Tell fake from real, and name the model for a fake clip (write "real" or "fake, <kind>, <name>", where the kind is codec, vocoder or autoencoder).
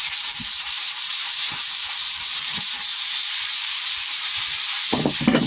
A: fake, vocoder, BigVGAN v2